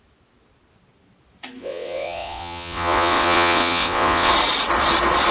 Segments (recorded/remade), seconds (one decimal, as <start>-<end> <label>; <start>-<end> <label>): 0.0-1.6 recorded; 1.6-4.3 remade; 4.3-5.3 recorded